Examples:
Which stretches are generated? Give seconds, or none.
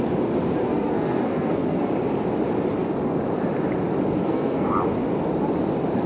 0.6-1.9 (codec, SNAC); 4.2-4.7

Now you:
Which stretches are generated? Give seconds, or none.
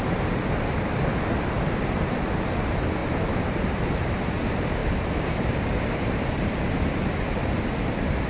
3.0-4.3 (vocoder, BigVGAN v2); 4.8-6.8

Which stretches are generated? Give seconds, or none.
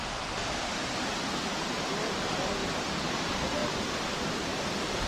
none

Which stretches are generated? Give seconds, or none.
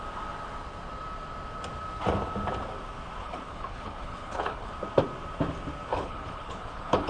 3.2-4.7 (codec, HILCodec); 5.9-7.1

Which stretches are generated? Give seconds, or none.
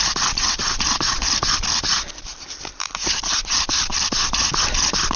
0.0-0.6 (vocoder, BigVGAN v2); 1.2-3.9; 4.6-5.2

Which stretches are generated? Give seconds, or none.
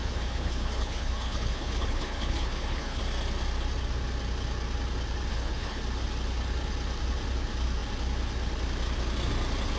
0.0-3.0 (codec, HILCodec); 5.3-5.8